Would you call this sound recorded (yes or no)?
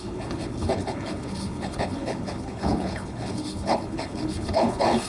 no